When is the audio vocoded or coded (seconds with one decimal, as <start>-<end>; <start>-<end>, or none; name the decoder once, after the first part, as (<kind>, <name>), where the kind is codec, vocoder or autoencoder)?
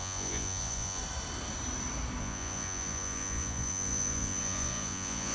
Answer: 0.0-1.0 (vocoder, Vocos); 2.2-5.3